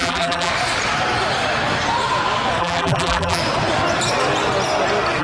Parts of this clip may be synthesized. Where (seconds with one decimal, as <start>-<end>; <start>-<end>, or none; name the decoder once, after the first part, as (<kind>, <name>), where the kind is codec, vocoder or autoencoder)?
0.0-0.5 (vocoder, BigVGAN v2); 2.6-3.4

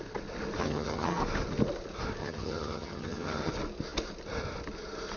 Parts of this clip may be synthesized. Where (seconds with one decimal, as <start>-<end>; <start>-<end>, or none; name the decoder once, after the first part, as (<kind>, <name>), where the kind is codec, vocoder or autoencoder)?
0.6-1.2 (vocoder, HiFi-GAN); 2.2-3.5

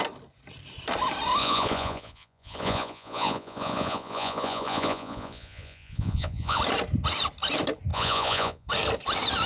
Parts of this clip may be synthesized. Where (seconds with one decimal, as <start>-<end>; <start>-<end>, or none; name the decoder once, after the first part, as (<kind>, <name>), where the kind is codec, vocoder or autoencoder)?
1.4-6.6 (vocoder, Vocos); 7.9-8.7

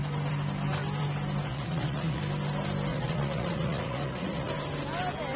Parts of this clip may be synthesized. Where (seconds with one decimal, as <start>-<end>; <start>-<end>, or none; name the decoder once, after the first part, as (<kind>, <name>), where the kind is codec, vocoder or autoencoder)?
1.5-2.2 (vocoder, Vocos); 2.9-4.5

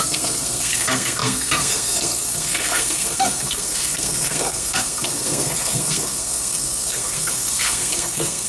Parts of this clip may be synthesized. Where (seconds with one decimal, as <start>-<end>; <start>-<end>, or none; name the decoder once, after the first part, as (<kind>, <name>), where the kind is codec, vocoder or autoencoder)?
0.0-8.5 (codec, SNAC)

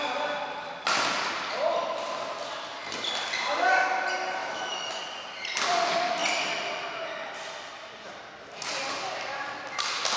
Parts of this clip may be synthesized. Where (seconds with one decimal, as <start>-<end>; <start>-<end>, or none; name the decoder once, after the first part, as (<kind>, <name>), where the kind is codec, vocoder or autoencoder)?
4.4-5.0 (autoencoder, DAC-VAE)

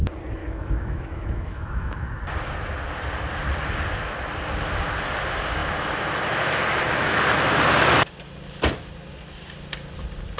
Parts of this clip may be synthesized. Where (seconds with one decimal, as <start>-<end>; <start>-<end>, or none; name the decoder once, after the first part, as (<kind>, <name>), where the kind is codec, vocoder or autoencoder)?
0.4-2.2 (autoencoder, DAC-VAE)

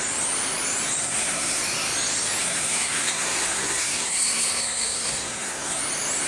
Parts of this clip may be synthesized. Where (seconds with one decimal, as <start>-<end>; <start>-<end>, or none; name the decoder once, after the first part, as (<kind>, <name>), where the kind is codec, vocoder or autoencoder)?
1.0-1.6 (codec, SNAC); 2.4-5.8